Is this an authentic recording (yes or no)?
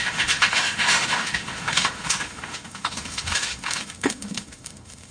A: no